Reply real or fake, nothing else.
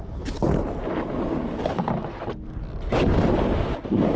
real